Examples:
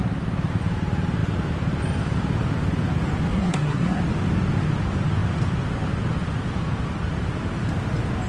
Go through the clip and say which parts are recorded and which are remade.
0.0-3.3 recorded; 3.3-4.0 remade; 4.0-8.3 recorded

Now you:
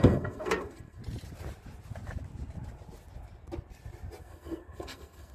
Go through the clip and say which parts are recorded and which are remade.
0.0-1.0 remade; 1.0-4.2 recorded; 4.2-5.3 remade

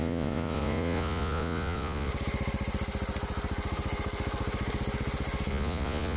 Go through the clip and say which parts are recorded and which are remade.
0.0-2.1 remade; 2.1-5.5 recorded; 5.5-6.2 remade